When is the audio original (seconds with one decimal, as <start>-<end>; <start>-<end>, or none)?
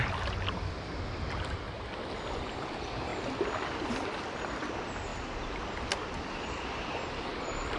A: 0.0-7.8